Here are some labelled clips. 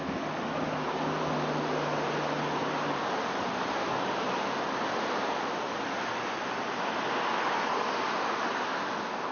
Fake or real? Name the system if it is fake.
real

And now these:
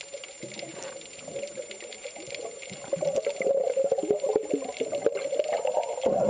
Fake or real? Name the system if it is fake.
real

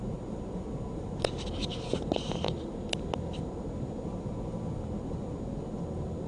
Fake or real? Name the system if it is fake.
real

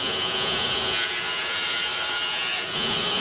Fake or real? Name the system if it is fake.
fake, vocoder, Vocos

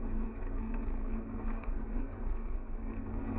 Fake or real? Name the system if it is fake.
fake, codec, SNAC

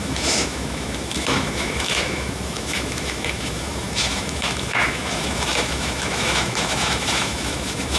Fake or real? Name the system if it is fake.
fake, autoencoder, DAC-VAE